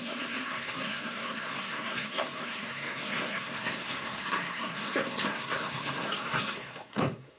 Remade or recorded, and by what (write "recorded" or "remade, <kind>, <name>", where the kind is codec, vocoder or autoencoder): remade, codec, SNAC